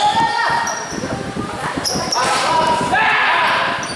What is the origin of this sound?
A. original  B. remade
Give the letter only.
A